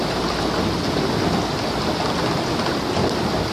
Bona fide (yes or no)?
yes